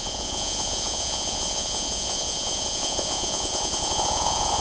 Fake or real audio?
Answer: fake